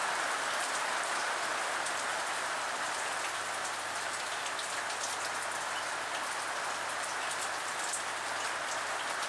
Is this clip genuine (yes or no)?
yes